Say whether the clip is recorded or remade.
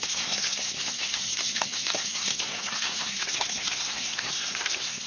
remade